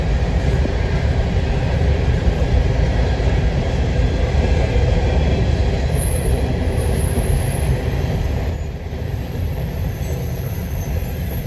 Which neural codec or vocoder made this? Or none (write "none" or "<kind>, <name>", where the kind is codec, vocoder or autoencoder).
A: vocoder, BigVGAN v2